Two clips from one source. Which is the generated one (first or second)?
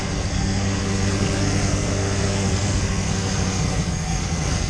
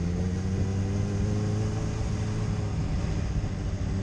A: first